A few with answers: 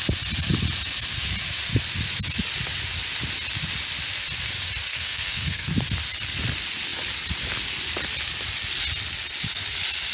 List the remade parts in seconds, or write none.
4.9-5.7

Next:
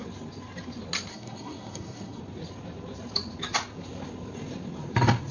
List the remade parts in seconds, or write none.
1.1-2.2

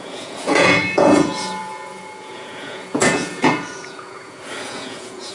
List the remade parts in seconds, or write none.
0.0-5.3

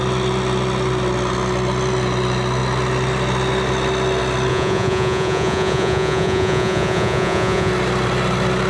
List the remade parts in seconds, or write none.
4.5-7.7

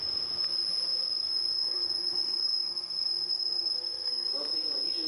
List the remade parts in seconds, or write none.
1.2-4.3